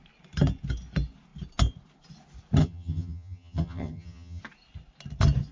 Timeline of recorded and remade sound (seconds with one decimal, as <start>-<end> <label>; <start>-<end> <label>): 0.0-2.6 recorded; 2.6-4.4 remade; 4.4-5.5 recorded